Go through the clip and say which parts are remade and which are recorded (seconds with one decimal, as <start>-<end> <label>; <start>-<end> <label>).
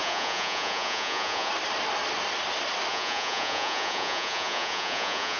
0.0-1.5 remade; 1.5-2.9 recorded; 2.9-5.4 remade